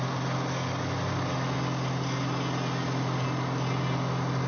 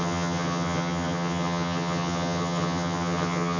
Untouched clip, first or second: first